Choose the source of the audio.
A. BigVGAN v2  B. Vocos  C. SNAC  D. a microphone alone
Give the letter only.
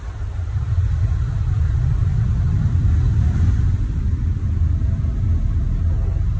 D